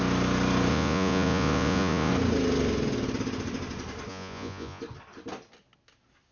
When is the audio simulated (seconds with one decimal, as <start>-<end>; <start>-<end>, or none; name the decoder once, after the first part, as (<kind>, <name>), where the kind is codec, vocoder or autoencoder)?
0.7-2.1 (vocoder, Vocos); 4.1-4.8